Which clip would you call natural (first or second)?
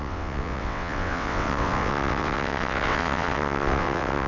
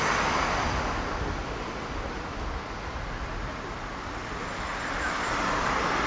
second